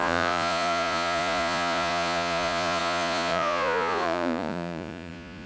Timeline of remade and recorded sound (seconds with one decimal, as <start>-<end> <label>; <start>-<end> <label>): 0.0-5.5 remade